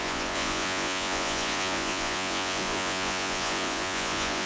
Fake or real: fake